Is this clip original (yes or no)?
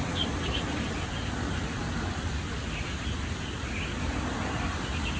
yes